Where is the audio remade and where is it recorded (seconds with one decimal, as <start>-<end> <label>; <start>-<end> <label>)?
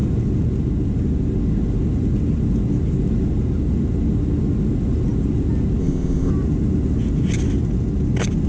0.0-5.8 recorded; 5.8-6.3 remade; 6.3-8.5 recorded